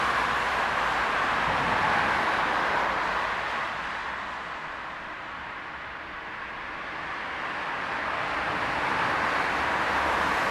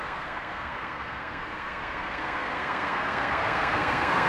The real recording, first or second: first